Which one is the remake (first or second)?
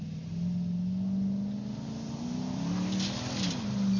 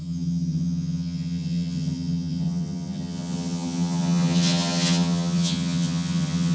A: second